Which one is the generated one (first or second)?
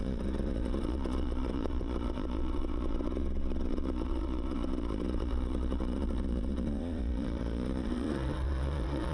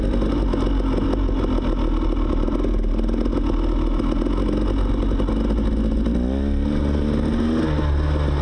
first